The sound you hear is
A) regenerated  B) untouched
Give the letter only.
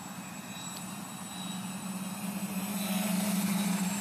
B